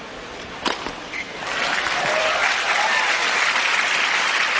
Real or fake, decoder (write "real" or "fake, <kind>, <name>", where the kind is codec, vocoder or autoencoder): real